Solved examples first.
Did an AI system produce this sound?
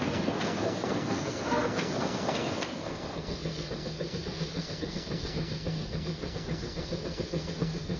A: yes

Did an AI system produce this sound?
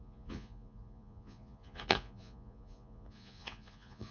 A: yes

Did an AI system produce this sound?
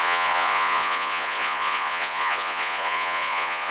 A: yes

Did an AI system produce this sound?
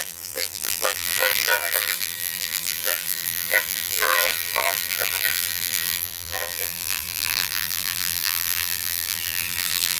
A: yes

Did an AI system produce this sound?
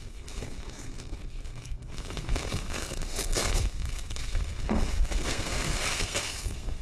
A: yes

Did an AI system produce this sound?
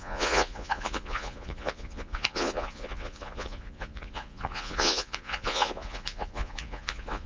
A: yes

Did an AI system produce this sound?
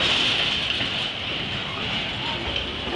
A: no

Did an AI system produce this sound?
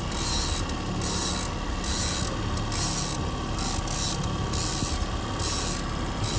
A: no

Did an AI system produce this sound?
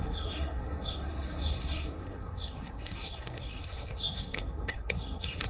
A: yes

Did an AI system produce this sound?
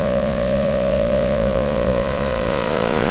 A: yes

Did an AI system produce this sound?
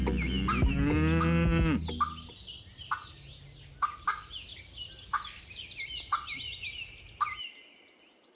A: no